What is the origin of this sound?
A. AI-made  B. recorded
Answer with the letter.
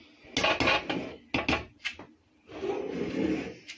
B